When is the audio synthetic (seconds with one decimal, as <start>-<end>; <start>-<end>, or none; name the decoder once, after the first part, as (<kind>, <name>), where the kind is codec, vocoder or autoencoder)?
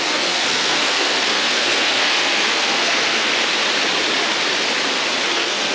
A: 0.0-3.3 (codec, SNAC); 5.3-5.7